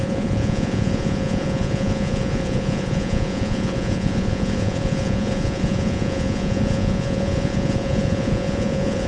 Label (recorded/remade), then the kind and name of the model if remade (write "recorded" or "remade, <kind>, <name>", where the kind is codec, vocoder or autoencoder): remade, vocoder, Vocos